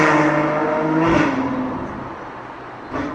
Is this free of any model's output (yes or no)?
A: yes